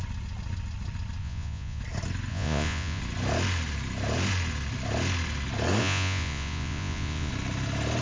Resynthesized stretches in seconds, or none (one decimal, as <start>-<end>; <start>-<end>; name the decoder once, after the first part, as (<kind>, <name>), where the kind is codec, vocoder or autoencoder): 1.2-1.8 (vocoder, Vocos); 2.3-3.0; 5.8-7.3